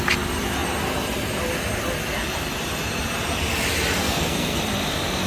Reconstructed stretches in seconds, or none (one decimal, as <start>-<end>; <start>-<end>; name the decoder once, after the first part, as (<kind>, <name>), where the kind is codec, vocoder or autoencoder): 4.0-4.6 (codec, SNAC)